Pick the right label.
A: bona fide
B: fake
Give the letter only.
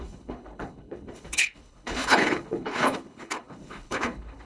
B